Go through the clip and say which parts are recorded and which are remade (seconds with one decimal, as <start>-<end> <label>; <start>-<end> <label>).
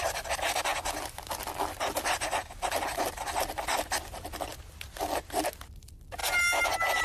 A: 0.0-7.0 recorded